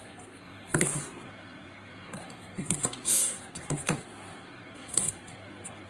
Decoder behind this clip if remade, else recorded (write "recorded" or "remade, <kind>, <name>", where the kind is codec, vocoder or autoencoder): remade, codec, SNAC